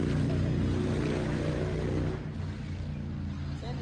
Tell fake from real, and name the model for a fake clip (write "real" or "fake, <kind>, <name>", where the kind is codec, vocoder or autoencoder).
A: real